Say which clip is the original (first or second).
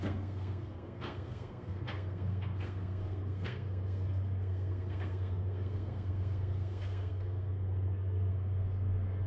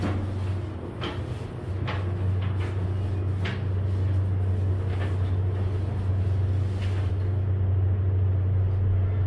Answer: second